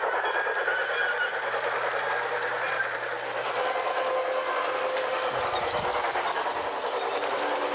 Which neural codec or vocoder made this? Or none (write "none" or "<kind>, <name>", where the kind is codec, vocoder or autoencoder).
none